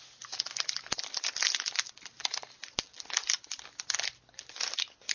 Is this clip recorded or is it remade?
recorded